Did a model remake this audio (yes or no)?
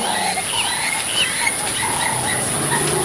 no